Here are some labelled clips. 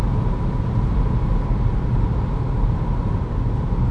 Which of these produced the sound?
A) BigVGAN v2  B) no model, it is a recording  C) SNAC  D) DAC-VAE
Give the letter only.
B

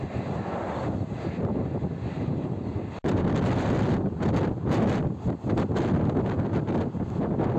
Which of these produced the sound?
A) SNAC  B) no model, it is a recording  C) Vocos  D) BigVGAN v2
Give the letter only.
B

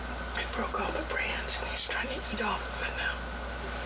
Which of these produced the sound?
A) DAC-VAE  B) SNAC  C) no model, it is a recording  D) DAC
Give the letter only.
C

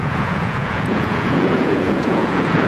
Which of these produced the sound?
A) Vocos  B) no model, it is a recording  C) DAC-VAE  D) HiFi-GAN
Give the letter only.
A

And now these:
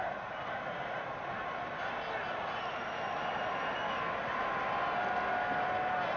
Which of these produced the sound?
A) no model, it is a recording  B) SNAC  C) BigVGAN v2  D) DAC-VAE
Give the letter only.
A